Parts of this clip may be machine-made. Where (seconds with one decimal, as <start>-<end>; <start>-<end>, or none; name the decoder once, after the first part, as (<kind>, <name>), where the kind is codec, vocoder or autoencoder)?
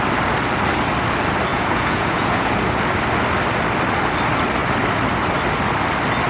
1.5-2.5 (vocoder, Vocos)